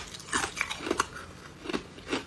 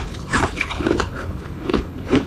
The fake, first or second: second